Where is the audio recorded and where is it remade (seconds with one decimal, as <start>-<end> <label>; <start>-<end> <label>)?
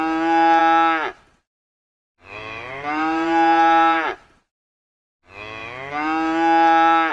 0.0-1.9 recorded; 1.9-4.4 remade; 4.4-7.1 recorded